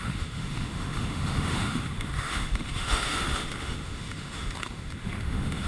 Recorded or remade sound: remade